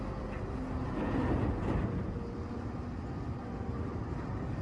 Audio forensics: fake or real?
real